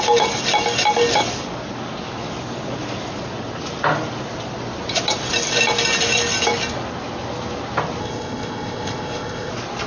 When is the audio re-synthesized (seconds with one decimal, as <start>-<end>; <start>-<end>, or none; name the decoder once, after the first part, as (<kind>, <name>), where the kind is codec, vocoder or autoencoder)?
8.0-9.5 (codec, ZipCodec)